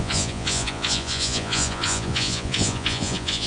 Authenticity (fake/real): fake